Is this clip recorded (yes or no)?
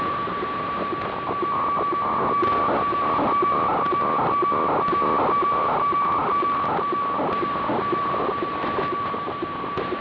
yes